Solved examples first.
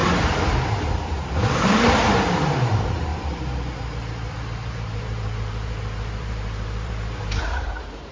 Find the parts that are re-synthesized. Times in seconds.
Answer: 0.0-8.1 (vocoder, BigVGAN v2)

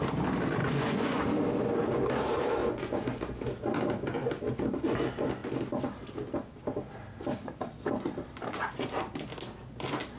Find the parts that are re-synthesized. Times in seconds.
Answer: 0.6-1.2 (vocoder, Vocos); 2.6-3.2

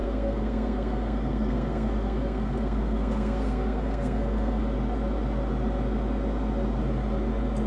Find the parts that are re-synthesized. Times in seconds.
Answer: 0.0-4.6 (codec, SNAC)

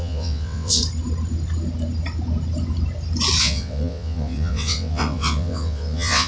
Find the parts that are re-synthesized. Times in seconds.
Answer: 0.0-0.8 (vocoder, WaveNeXt); 3.4-6.3